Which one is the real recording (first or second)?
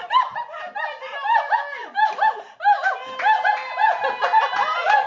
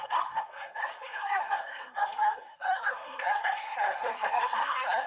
first